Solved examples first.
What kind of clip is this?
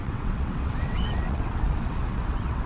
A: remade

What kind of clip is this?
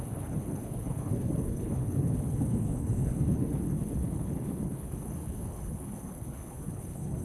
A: remade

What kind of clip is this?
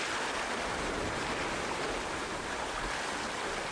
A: recorded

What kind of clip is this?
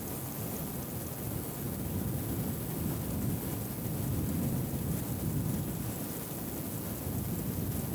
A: recorded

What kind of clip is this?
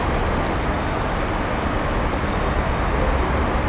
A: recorded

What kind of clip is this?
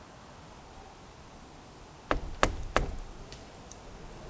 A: recorded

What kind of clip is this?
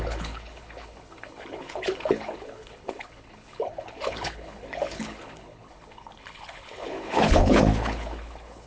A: remade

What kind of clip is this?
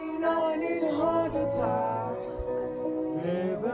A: recorded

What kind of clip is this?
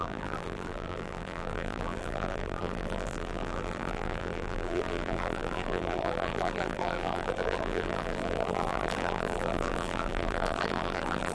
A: remade